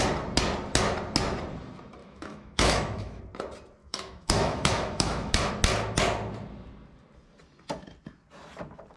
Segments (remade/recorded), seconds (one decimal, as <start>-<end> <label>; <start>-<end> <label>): 0.0-2.0 recorded; 2.0-3.2 remade; 3.2-3.8 recorded; 3.8-5.5 remade; 5.5-9.0 recorded